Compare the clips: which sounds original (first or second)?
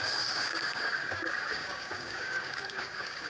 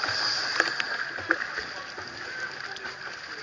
second